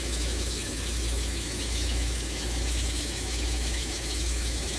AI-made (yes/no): yes